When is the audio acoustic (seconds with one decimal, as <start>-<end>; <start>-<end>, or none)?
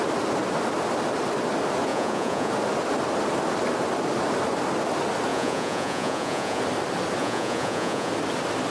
0.0-1.9; 2.5-5.3; 6.6-7.2; 8.1-8.7